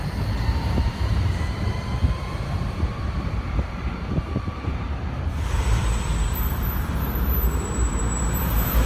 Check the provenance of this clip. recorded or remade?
remade